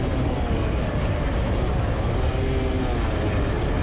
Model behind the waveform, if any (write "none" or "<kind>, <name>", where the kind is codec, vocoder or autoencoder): none